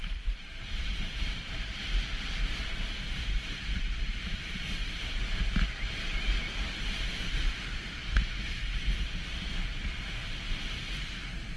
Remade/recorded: remade